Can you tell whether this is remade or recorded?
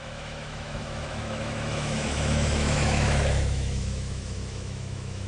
remade